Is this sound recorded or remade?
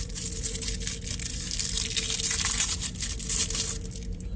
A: recorded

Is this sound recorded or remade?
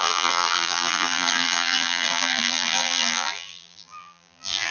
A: remade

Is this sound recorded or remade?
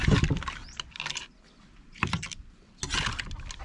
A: recorded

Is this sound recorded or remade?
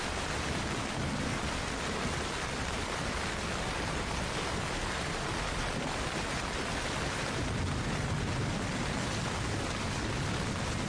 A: recorded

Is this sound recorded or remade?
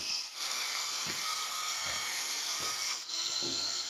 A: remade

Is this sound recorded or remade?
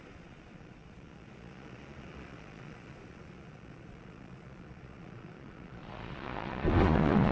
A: remade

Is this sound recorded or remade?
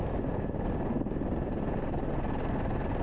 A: recorded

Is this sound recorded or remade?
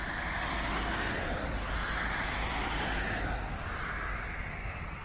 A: recorded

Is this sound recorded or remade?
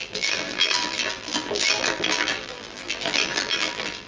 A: remade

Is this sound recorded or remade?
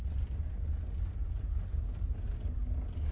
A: recorded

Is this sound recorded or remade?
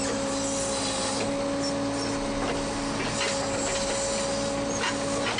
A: recorded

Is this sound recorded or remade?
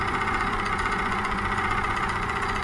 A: remade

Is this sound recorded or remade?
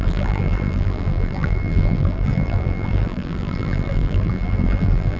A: remade